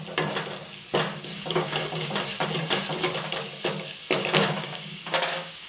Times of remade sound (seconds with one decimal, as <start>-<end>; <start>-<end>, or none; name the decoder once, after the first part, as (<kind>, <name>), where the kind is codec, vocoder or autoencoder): 1.3-2.1 (codec, DAC); 4.2-5.7